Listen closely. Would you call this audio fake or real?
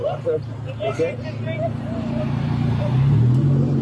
fake